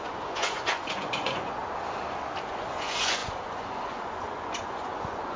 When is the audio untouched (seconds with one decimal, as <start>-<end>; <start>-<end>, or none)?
1.6-2.4